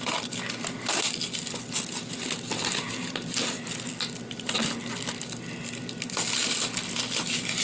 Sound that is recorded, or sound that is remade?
recorded